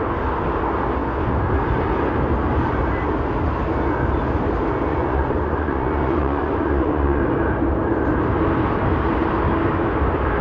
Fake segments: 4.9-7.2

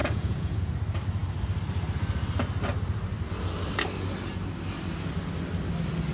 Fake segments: 0.0-0.6

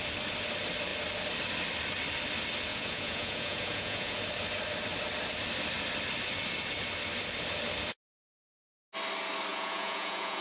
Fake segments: 2.7-4.2; 9.5-10.4

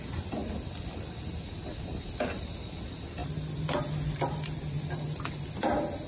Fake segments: none

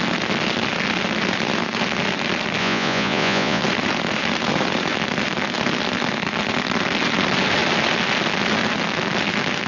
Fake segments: 2.6-3.6

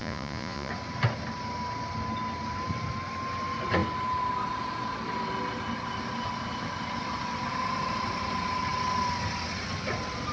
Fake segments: 0.0-0.7